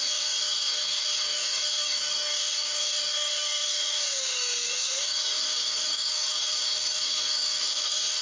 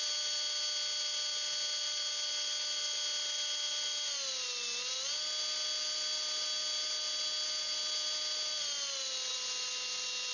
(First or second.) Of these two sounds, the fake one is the first